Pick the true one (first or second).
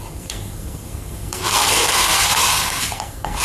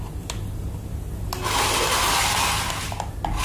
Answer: second